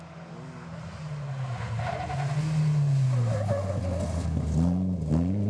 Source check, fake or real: real